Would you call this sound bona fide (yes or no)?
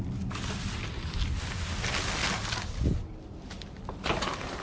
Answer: yes